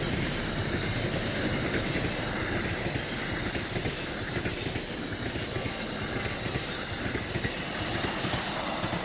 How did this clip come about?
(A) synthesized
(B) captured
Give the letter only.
B